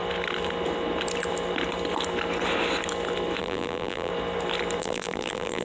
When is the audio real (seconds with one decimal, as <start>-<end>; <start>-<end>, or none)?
0.0-3.4; 4.1-4.8

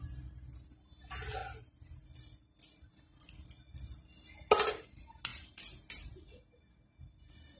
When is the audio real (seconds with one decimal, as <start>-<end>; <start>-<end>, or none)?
0.0-7.6

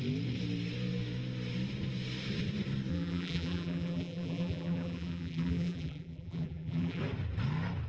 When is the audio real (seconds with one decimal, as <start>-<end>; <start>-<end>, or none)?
0.0-2.9; 7.0-7.9

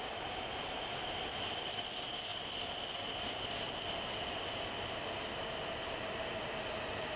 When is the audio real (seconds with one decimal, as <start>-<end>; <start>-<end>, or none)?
0.0-7.2

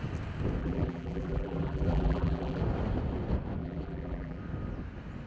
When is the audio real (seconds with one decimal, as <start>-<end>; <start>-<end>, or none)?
0.0-0.6; 2.6-3.6; 4.4-5.3